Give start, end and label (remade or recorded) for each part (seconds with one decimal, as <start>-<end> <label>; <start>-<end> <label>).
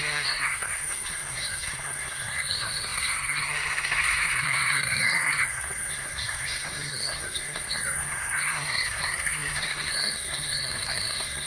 0.0-11.5 remade